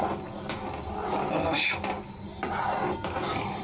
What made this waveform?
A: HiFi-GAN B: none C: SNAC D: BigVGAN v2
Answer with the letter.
B